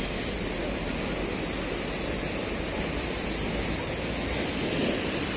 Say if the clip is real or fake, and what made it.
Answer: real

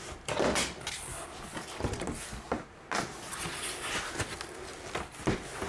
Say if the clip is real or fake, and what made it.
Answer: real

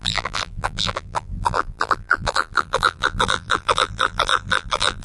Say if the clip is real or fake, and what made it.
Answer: fake, vocoder, BigVGAN v2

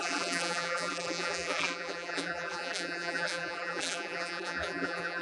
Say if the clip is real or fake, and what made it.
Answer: fake, vocoder, BigVGAN v2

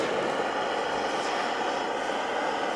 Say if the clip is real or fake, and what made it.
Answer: real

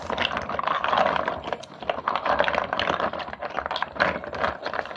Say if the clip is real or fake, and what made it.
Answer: real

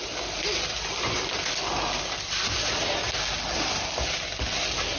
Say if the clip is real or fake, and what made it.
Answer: real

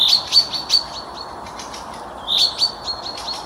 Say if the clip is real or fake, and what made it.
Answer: real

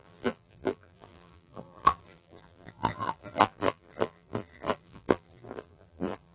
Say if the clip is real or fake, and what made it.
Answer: fake, vocoder, BigVGAN v2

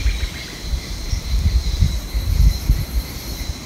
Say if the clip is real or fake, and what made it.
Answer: real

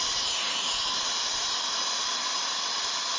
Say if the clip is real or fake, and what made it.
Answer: real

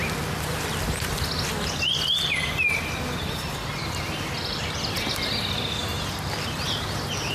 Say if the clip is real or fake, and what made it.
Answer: real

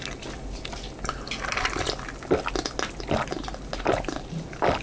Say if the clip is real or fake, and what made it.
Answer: real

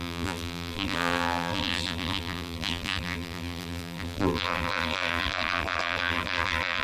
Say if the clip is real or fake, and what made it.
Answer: fake, vocoder, BigVGAN v2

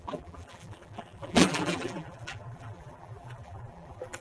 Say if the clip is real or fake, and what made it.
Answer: fake, vocoder, BigVGAN v2